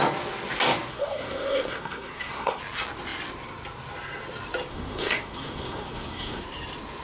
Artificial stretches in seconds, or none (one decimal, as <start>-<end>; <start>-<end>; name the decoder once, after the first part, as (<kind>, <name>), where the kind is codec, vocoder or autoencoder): 0.9-2.6 (codec, SNAC); 4.7-6.4